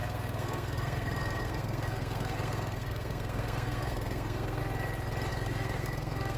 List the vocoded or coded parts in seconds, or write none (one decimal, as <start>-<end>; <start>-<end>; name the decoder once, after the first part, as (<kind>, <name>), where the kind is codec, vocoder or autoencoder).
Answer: 0.0-4.6 (codec, SNAC); 5.3-6.4